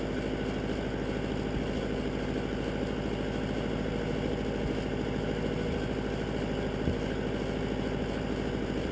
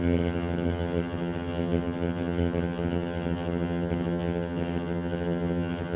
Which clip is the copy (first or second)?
second